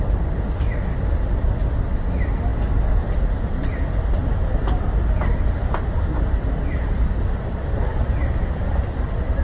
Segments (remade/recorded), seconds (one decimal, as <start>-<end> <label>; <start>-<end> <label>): 0.0-9.4 recorded

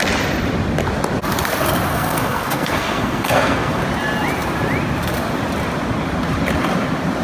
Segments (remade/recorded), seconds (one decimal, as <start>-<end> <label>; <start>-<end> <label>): 0.0-1.9 recorded; 1.9-3.8 remade; 3.8-7.2 recorded

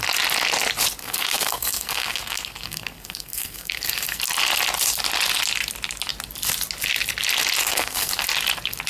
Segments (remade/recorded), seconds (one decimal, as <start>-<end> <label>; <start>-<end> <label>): 0.0-1.0 recorded; 1.0-4.2 remade; 4.2-7.6 recorded; 7.6-8.1 remade; 8.1-8.9 recorded